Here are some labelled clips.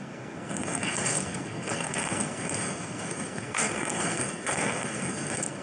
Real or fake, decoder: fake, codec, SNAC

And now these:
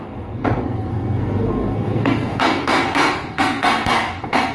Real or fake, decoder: fake, codec, SNAC